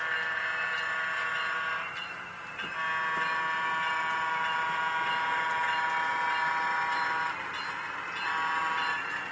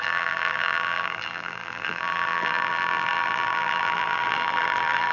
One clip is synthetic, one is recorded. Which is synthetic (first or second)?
second